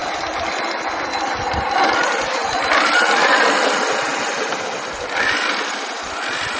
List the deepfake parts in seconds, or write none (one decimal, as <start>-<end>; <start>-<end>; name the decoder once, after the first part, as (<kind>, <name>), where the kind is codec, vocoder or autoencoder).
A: none